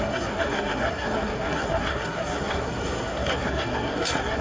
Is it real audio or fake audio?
fake